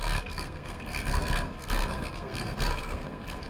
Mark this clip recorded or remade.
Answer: remade